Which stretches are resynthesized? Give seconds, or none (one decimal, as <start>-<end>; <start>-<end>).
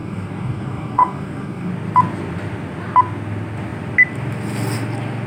0.0-1.7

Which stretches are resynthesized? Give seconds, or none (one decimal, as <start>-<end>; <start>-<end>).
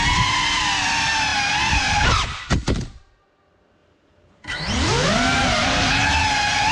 3.8-5.9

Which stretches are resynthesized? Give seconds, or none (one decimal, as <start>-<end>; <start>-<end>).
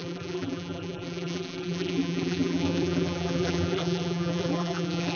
0.0-5.2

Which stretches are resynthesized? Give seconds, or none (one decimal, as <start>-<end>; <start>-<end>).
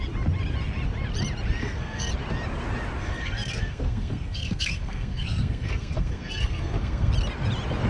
1.6-2.1; 3.0-7.1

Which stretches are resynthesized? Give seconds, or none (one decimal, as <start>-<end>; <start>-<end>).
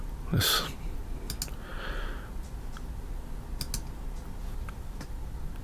4.4-5.6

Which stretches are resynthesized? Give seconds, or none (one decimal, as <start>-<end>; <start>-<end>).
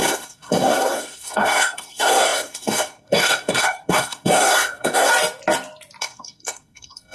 0.0-5.1; 6.0-7.1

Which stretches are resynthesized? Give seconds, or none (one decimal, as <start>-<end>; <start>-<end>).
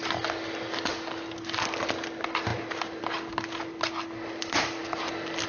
none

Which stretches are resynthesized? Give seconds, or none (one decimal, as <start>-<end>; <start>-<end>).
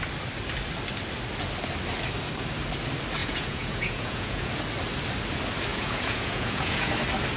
3.2-4.5; 5.7-6.9